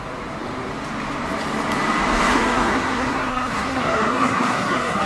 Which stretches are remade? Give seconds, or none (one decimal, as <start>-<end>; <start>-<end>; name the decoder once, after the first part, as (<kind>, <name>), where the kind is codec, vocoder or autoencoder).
2.3-5.1 (codec, SNAC)